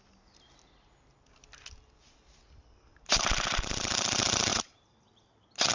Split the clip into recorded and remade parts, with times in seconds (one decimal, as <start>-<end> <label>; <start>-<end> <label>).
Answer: 0.0-2.9 recorded; 2.9-3.6 remade; 3.6-4.5 recorded; 4.5-5.7 remade